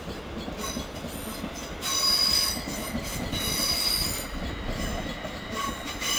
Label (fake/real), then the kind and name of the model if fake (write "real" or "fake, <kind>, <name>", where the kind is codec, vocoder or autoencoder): real